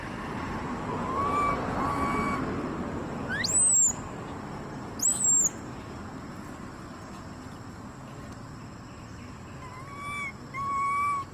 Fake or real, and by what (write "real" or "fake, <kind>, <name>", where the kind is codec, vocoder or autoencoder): real